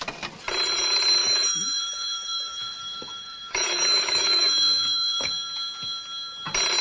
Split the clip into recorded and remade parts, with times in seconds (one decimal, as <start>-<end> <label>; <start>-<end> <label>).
0.0-1.2 recorded; 1.2-5.3 remade; 5.3-6.8 recorded

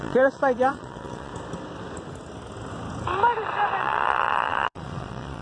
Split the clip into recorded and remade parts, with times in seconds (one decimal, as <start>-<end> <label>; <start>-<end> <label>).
0.0-1.3 remade; 1.3-3.8 recorded; 3.8-5.4 remade

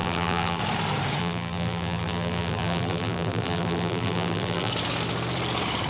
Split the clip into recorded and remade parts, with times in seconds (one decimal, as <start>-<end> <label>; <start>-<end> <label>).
0.0-0.6 remade; 0.6-1.2 recorded; 1.2-4.7 remade; 4.7-5.9 recorded

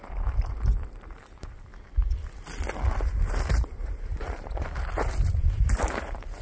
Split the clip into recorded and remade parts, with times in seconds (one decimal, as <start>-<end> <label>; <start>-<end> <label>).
0.0-1.7 remade; 1.7-3.0 recorded; 3.0-6.4 remade